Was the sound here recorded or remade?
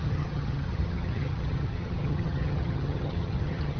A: remade